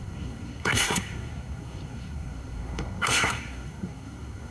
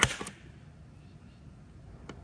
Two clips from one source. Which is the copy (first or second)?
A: first